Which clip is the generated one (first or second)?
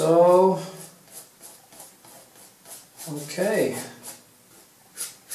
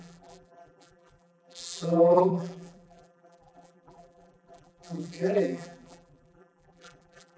second